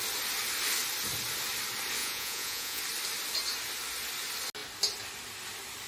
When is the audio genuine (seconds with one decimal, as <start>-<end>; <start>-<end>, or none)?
0.0-2.0; 2.8-5.9